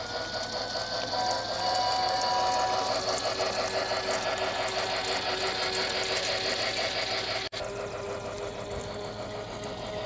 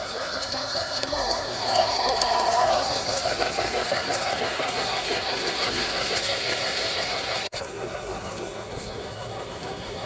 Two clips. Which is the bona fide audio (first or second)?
first